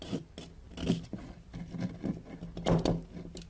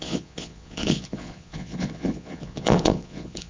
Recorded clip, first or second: first